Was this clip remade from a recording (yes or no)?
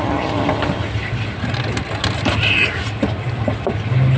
no